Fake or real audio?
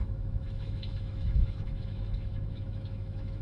fake